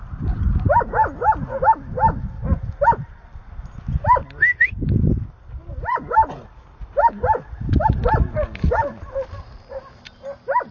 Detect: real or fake real